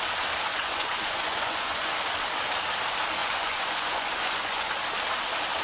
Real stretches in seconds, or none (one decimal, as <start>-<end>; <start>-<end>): 0.0-0.5; 2.0-3.2; 4.7-5.6